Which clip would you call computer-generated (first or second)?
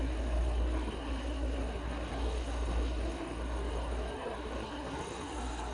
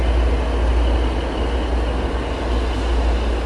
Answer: first